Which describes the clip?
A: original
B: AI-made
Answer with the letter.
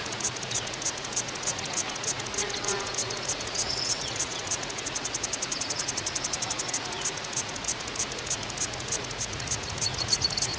B